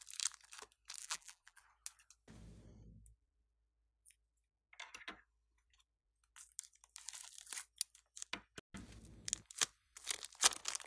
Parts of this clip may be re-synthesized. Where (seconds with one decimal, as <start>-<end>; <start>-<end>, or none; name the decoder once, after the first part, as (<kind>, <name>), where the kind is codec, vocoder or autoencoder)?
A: 1.0-1.6 (vocoder, BigVGAN v2)